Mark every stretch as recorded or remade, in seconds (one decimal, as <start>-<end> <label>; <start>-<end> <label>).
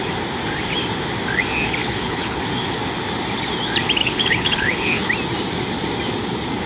0.0-1.8 recorded; 1.8-2.4 remade; 2.4-4.0 recorded; 4.0-5.1 remade; 5.1-6.7 recorded